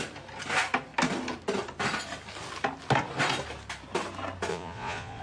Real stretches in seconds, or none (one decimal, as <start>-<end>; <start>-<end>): 0.0-4.5